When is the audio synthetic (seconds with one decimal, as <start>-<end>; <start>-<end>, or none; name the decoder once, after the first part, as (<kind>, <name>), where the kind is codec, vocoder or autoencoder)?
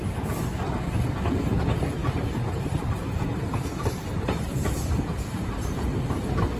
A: 2.0-6.0 (vocoder, BigVGAN v2)